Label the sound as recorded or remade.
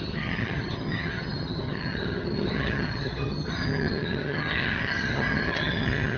remade